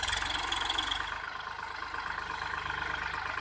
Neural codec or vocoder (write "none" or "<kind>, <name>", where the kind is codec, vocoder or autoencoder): none